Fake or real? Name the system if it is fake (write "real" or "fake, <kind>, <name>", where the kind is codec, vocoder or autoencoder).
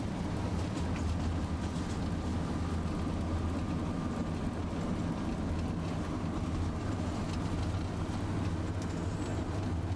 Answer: real